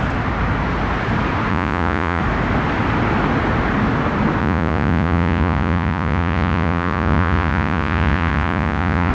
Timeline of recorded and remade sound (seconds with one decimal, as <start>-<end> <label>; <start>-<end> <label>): 0.0-1.5 recorded; 1.5-2.2 remade; 2.2-4.4 recorded; 4.4-9.1 remade